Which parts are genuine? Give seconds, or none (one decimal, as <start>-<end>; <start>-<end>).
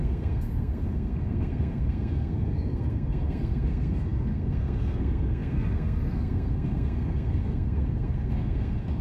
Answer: none